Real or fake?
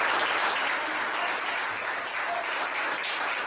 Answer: real